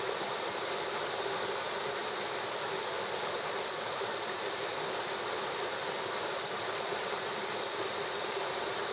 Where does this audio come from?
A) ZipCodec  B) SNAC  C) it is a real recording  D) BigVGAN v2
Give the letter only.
D